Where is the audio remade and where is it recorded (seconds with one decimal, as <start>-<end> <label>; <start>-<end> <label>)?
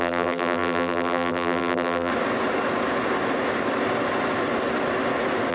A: 0.0-2.1 remade; 2.1-5.5 recorded